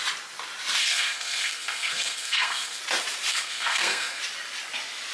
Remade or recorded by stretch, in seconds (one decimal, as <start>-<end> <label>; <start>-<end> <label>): 0.0-0.8 recorded; 0.8-2.8 remade; 2.8-3.3 recorded; 3.3-4.2 remade; 4.2-5.1 recorded